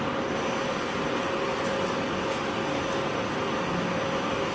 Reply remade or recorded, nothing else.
recorded